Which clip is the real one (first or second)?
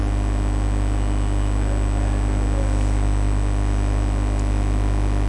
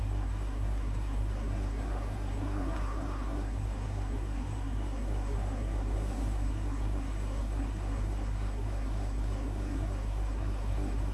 first